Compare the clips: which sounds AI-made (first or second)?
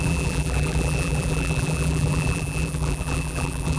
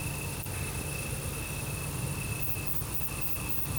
first